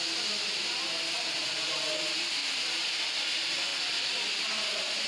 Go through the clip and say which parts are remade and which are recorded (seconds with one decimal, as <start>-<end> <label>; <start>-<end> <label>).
0.0-2.4 recorded; 2.4-3.0 remade; 3.0-3.7 recorded; 3.7-4.4 remade; 4.4-5.1 recorded